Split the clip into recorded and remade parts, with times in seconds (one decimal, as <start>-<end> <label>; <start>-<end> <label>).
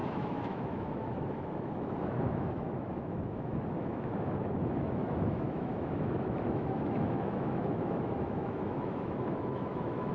0.0-10.1 remade